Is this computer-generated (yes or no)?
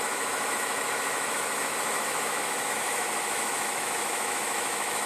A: yes